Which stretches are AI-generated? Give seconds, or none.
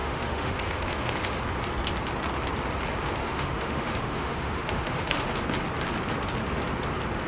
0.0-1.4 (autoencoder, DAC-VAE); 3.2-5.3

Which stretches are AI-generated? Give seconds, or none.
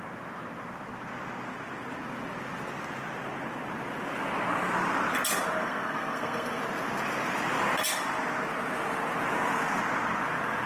5.6-6.6 (codec, SNAC)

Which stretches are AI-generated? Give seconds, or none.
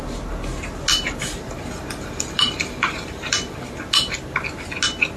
0.9-3.7 (vocoder, BigVGAN v2)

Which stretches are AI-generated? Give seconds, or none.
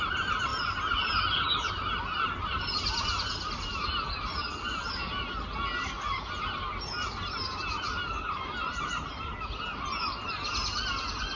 none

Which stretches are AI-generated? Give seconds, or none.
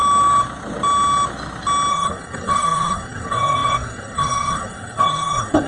1.9-5.7 (codec, SNAC)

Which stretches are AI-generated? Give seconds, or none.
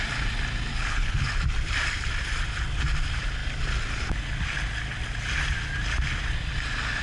0.7-1.3 (codec, HILCodec)